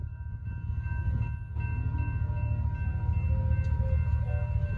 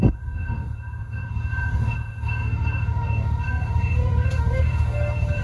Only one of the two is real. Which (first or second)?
first